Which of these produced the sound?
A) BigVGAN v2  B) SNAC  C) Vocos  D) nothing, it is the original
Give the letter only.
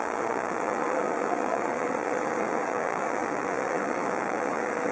C